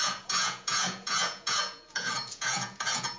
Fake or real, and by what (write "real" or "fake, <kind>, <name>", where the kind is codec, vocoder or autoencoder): fake, vocoder, Vocos